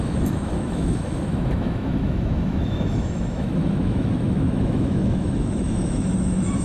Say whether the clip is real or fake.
fake